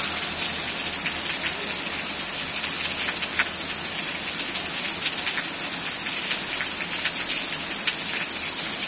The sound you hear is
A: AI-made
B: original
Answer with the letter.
B